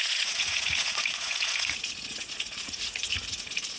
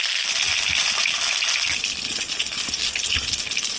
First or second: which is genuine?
second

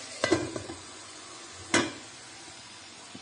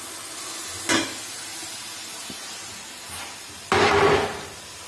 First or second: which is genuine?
second